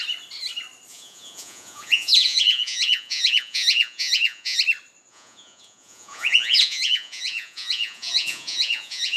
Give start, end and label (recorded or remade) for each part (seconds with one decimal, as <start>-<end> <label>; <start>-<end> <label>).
0.0-0.9 recorded; 0.9-4.6 remade; 4.6-5.1 recorded; 5.1-9.2 remade